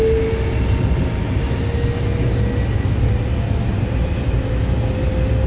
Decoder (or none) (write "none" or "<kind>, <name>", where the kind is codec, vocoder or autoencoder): none